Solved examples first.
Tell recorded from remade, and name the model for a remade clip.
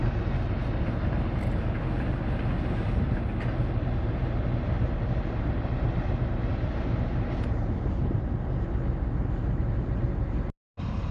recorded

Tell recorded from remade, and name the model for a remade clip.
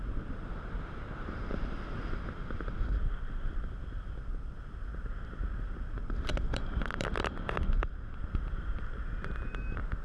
remade, vocoder, BigVGAN v2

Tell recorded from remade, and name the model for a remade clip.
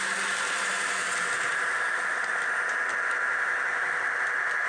recorded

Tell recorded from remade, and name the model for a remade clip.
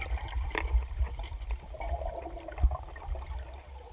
recorded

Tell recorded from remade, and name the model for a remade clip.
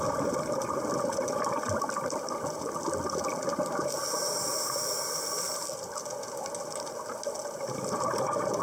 recorded